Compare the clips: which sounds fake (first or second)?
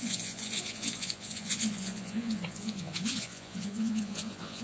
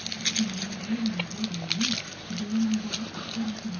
first